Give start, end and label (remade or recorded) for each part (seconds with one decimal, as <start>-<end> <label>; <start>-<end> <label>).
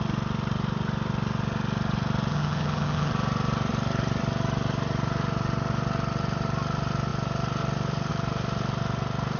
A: 0.0-2.3 recorded; 2.3-3.1 remade; 3.1-9.4 recorded